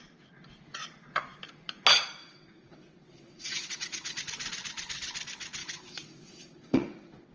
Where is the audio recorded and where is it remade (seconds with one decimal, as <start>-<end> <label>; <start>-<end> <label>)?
0.0-2.2 recorded; 2.2-4.2 remade; 4.2-5.6 recorded; 5.6-7.3 remade